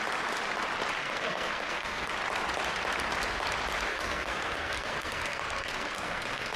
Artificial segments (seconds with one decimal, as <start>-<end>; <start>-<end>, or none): 1.0-2.1; 3.9-6.6